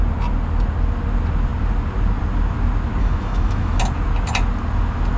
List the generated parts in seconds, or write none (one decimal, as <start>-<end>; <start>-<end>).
3.0-3.8